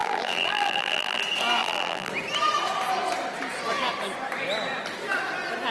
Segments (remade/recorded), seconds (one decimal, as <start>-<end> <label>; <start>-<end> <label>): 0.0-1.2 remade; 1.2-1.6 recorded; 1.6-2.1 remade; 2.1-5.7 recorded